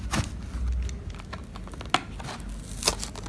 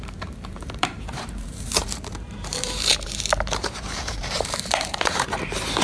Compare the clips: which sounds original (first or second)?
first